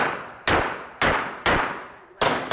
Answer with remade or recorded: recorded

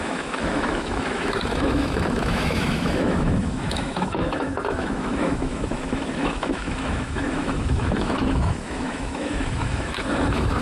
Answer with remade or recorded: remade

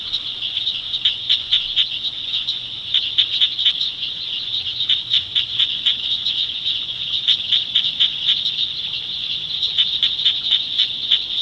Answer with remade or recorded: remade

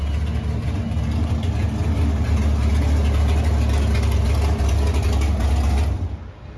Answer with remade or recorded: recorded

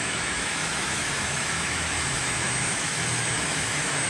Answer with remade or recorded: remade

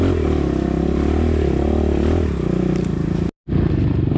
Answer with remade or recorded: recorded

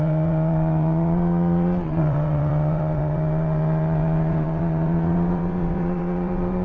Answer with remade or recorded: remade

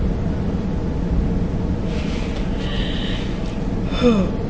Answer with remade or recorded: recorded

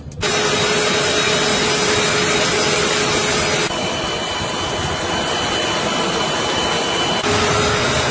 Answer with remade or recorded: recorded